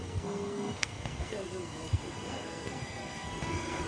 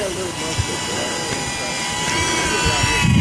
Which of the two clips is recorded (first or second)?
second